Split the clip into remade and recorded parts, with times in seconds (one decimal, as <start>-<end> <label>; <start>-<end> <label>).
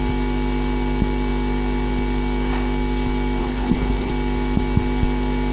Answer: 0.0-3.4 recorded; 3.4-4.1 remade; 4.1-5.5 recorded